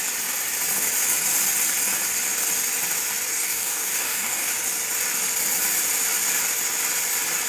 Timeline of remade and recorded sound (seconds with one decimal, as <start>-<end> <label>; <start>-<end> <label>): 0.0-3.3 recorded; 3.3-4.5 remade; 4.5-7.5 recorded